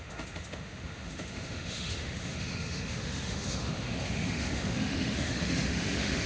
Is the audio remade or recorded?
remade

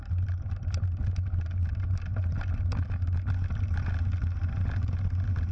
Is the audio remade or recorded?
recorded